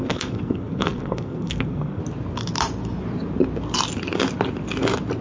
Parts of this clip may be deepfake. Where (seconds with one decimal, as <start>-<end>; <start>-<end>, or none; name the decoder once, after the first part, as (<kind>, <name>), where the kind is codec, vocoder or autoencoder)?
0.0-2.0 (codec, SNAC)